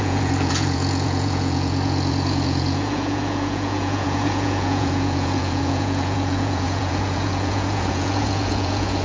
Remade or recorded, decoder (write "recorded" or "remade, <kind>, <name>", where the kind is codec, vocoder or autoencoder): remade, vocoder, Vocos